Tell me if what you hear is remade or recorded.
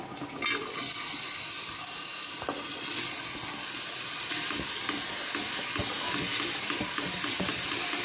recorded